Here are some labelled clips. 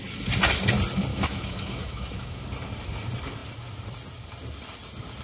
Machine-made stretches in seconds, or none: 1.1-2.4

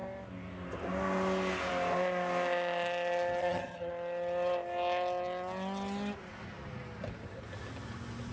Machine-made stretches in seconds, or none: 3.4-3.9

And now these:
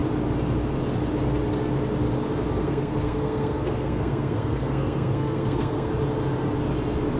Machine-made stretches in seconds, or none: 2.6-5.9